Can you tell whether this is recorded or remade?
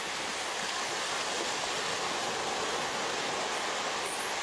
recorded